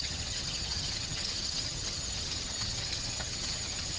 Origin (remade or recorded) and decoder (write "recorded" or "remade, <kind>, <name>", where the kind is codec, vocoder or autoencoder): remade, vocoder, HiFi-GAN